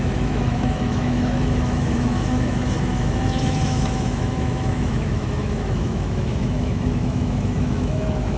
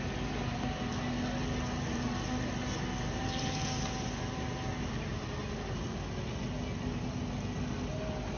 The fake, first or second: first